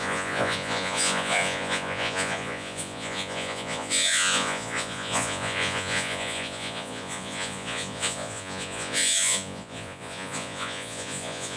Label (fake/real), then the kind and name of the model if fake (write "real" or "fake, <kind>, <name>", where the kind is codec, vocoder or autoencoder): fake, vocoder, Vocos